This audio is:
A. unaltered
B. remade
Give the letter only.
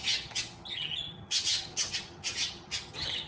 B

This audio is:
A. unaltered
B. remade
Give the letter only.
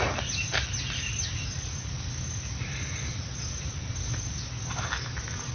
A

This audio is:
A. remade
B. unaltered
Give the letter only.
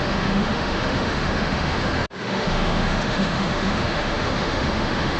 A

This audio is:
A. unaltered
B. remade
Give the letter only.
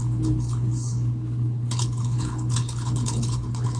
B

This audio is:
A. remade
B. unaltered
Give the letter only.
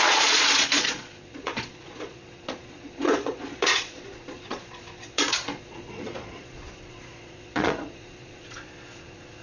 A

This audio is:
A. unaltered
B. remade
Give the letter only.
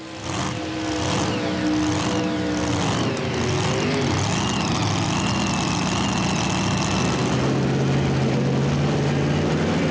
A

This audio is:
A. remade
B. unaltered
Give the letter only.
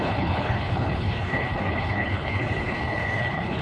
A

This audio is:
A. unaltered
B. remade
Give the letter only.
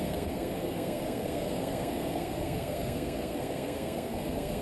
B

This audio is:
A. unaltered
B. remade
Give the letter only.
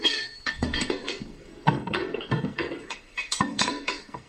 B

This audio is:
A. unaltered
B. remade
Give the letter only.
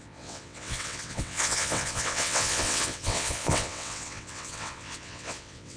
B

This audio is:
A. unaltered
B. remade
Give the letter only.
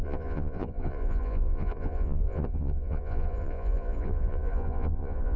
B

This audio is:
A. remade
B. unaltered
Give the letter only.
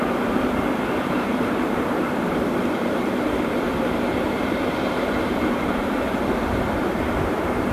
A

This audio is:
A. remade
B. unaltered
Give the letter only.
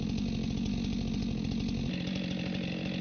B